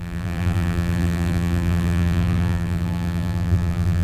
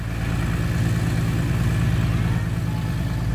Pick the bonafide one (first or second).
second